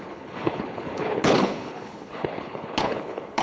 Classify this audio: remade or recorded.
remade